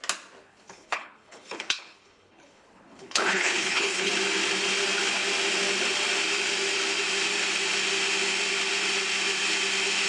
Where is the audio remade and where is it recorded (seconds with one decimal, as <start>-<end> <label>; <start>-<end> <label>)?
0.0-0.4 recorded; 0.4-4.1 remade; 4.1-10.1 recorded